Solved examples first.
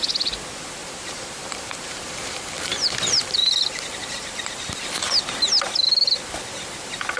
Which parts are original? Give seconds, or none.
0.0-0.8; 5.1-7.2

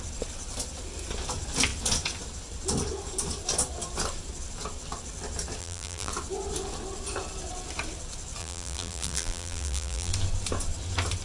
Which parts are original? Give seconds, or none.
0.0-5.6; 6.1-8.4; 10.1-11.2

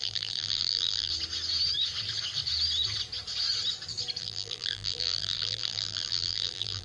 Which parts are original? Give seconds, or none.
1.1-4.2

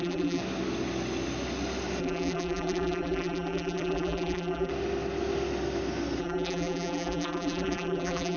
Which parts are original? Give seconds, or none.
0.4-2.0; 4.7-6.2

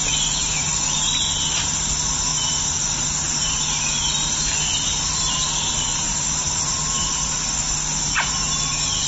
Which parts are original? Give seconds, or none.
0.0-9.1

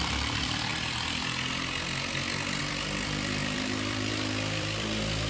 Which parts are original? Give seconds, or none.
0.7-2.6